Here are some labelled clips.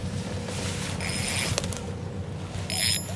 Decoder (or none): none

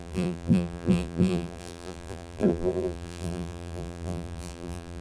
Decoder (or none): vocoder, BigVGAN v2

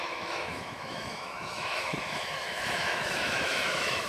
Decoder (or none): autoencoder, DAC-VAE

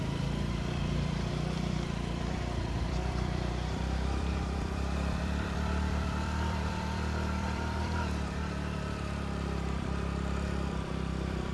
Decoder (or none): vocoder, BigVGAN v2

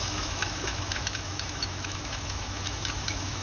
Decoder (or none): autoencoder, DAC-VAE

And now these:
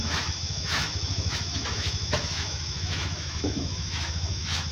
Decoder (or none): autoencoder, DAC-VAE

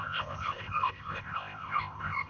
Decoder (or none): codec, ZipCodec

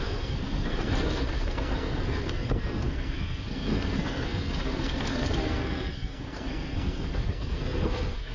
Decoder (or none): codec, SNAC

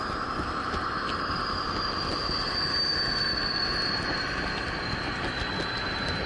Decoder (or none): none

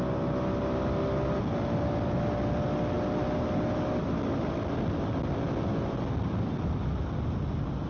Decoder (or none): none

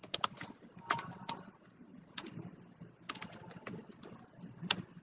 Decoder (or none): none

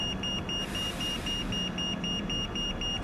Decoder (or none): none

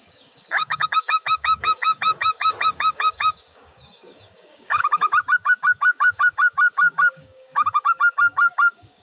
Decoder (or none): codec, DAC